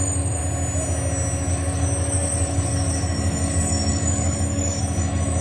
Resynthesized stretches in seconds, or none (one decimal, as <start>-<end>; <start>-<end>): 0.0-0.4; 1.5-5.4